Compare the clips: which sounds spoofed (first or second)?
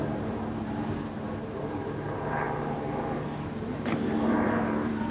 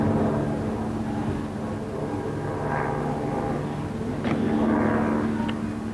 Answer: first